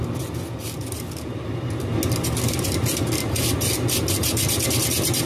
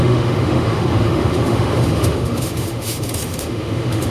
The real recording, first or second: first